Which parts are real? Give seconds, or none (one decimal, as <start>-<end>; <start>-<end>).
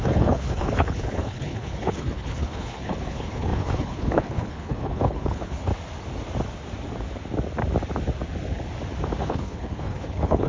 5.7-9.2